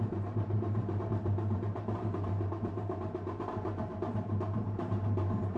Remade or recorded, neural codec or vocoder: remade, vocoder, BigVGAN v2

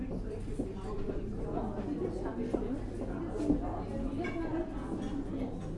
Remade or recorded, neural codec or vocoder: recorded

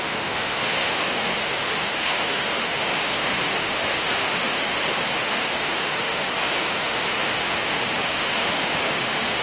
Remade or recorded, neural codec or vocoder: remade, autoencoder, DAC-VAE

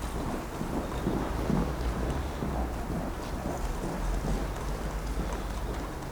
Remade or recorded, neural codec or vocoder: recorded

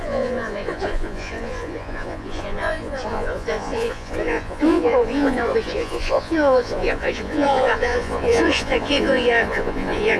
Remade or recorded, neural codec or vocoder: remade, vocoder, Vocos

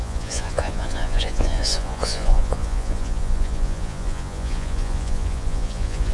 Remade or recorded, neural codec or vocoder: remade, vocoder, Vocos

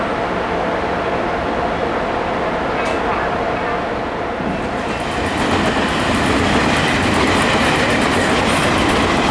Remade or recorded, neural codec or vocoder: recorded